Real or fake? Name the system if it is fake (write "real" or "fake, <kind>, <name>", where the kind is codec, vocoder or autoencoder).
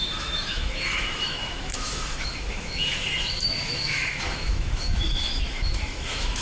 fake, autoencoder, DAC-VAE